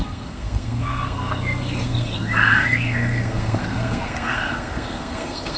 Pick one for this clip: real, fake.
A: fake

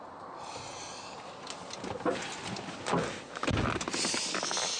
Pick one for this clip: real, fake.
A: real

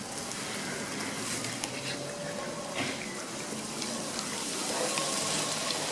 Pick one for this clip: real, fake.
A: real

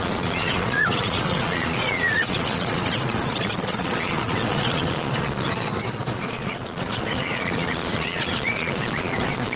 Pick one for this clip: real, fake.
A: fake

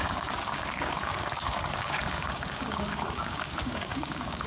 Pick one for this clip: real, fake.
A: fake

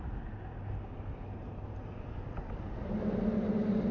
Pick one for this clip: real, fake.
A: real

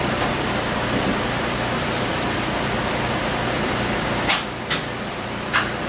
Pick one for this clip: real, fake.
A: fake